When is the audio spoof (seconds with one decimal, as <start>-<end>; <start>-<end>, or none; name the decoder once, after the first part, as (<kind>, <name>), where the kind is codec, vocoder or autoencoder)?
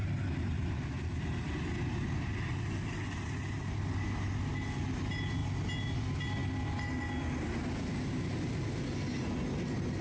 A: none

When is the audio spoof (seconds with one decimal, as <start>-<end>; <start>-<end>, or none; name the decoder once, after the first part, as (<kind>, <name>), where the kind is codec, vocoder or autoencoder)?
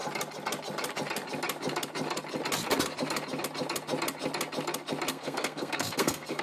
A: 5.1-6.4 (codec, SNAC)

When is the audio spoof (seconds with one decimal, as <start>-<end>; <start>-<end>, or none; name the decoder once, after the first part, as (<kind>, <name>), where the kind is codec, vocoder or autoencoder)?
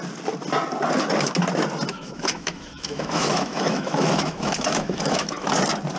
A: 1.9-5.5 (autoencoder, DAC-VAE)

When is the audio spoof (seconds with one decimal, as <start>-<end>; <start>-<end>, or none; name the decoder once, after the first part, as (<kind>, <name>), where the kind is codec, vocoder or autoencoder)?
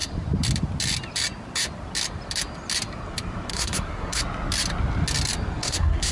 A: 3.5-4.2 (codec, SNAC); 5.6-6.1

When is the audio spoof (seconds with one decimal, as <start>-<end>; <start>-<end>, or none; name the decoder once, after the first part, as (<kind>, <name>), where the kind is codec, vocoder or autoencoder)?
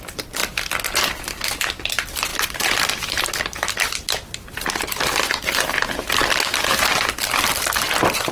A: 2.3-3.2 (vocoder, BigVGAN v2)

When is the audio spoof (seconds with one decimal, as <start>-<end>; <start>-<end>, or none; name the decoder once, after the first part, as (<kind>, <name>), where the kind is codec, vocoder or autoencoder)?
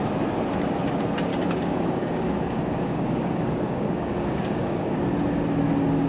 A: 1.3-5.0 (codec, DAC)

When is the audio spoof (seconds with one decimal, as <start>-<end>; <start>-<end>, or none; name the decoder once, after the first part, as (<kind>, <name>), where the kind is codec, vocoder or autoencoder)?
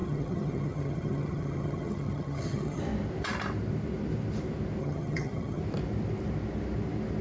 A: 0.0-2.8 (vocoder, HiFi-GAN); 4.8-5.6